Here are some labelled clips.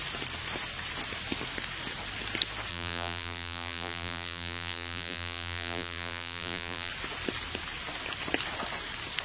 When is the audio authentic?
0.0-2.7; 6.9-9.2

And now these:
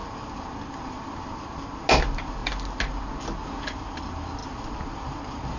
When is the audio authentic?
0.0-5.6